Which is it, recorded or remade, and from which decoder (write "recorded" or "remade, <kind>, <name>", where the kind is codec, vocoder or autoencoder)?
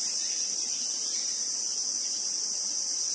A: remade, vocoder, BigVGAN v2